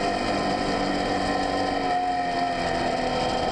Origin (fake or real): real